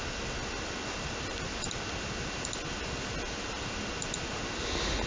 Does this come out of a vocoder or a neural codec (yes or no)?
no